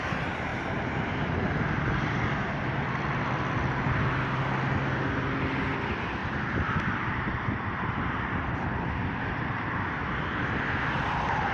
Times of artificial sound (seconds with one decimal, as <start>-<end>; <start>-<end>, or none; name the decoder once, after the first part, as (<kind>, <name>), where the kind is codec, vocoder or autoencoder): 0.5-3.8 (vocoder, BigVGAN v2); 6.2-9.7